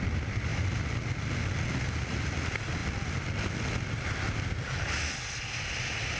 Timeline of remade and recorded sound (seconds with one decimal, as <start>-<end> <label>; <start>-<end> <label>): 0.0-6.2 recorded